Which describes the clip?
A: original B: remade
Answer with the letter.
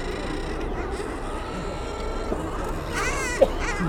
A